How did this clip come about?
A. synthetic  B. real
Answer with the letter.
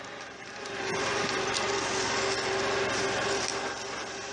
B